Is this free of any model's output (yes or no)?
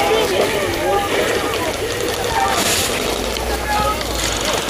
yes